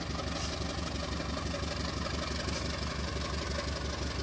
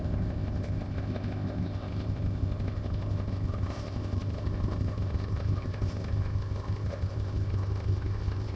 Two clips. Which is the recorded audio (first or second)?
first